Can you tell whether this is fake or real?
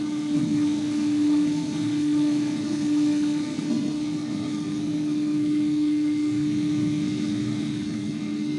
fake